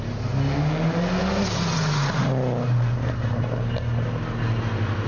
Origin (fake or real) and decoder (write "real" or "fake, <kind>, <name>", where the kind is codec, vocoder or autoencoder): real